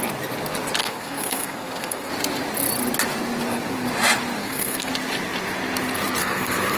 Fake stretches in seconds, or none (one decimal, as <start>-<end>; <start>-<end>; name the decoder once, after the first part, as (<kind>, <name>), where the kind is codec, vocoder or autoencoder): 0.8-2.1 (codec, SNAC); 4.4-4.9; 6.2-6.8

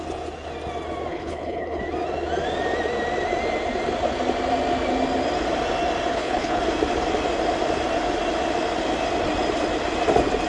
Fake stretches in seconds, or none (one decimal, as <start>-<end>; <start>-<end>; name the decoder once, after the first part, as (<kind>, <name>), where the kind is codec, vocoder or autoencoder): 1.1-1.8 (codec, HILCodec); 6.1-6.6

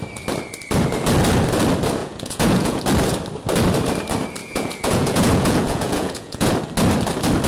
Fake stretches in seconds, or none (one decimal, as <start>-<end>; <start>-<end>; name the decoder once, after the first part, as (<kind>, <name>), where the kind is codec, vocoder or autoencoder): 2.0-2.8 (vocoder, Vocos); 4.4-6.5

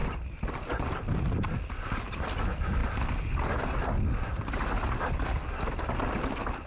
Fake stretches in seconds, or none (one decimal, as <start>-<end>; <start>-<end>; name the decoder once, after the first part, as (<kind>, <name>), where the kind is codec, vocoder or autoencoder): 2.4-2.8 (autoencoder, DAC-VAE)

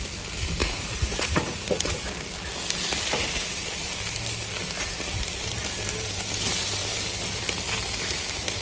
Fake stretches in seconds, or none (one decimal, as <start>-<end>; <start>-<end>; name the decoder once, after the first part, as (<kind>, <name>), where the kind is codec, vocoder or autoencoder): 0.6-2.0 (vocoder, Vocos)

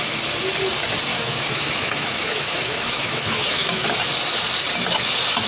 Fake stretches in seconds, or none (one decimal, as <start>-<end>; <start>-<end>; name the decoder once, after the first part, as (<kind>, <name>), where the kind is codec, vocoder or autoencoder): 1.1-4.0 (autoencoder, DAC-VAE)